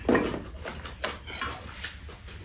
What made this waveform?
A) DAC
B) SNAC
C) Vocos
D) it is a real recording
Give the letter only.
D